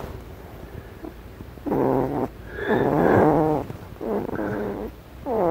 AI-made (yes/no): yes